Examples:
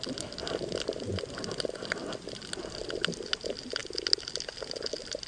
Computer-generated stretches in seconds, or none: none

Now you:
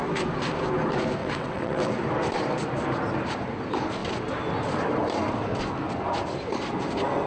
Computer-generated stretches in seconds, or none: 1.2-1.9

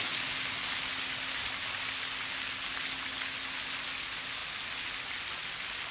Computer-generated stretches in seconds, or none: none

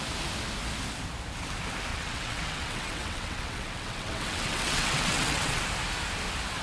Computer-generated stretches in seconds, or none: 1.9-5.6

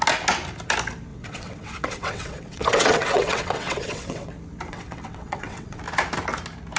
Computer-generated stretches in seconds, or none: 1.1-4.3; 4.7-5.8

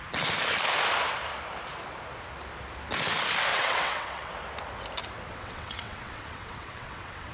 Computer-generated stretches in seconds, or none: 3.5-4.3; 5.3-7.3

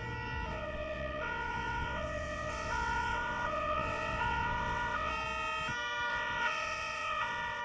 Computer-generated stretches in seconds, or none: 0.5-5.1; 6.1-7.6

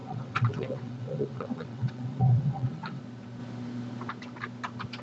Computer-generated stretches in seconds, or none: 0.0-3.0